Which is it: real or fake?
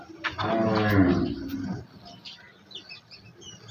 real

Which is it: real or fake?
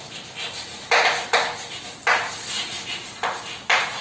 real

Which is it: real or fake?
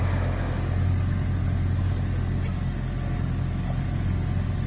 real